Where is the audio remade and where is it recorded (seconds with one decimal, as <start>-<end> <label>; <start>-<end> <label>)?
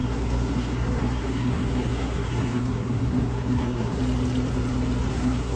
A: 0.0-4.0 remade; 4.0-5.1 recorded; 5.1-5.6 remade